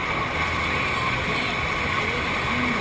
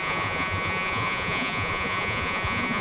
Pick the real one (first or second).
first